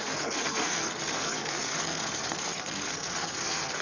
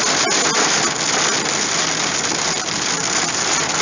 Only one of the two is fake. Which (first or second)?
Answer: first